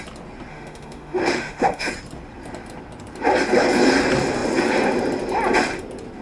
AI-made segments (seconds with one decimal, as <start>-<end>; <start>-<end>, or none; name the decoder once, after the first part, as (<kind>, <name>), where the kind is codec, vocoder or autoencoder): 0.5-1.9 (autoencoder, DAC-VAE)